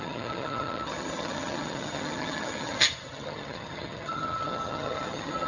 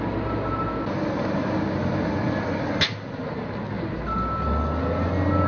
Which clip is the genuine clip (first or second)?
second